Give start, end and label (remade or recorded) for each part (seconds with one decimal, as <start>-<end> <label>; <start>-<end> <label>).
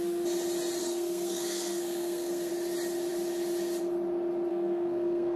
0.0-0.8 recorded; 0.8-2.5 remade; 2.5-4.5 recorded; 4.5-5.4 remade